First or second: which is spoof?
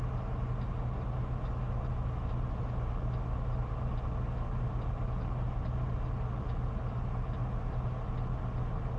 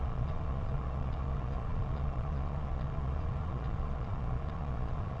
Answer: second